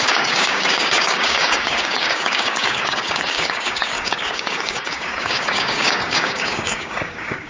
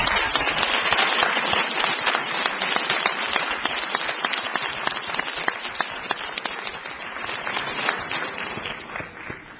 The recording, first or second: second